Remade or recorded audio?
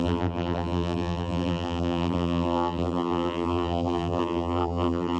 remade